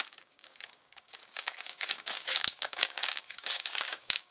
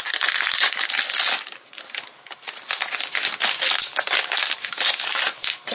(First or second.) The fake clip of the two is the first